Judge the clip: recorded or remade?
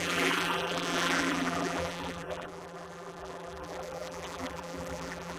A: remade